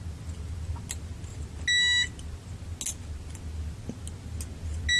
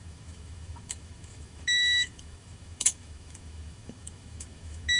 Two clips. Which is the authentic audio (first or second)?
first